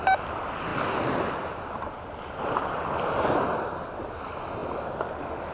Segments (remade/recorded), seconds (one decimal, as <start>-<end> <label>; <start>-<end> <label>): 0.0-5.5 recorded